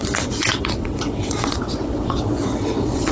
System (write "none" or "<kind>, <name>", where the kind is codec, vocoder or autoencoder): vocoder, WaveNeXt